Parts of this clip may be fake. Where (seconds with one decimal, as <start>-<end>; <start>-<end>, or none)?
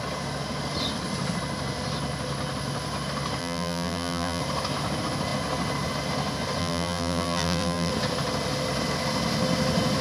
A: 3.4-4.4; 6.6-7.9